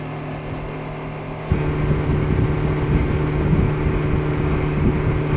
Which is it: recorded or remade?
recorded